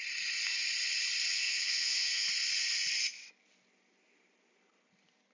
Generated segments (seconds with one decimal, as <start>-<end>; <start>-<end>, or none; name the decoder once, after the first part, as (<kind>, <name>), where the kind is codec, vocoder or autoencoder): 1.3-2.3 (codec, SNAC)